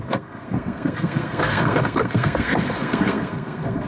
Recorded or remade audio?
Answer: remade